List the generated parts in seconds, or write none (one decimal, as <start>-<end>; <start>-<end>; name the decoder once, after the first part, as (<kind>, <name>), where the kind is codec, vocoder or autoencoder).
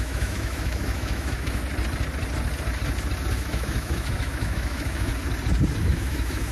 0.0-1.6 (autoencoder, DAC-VAE); 3.3-5.1; 5.8-6.5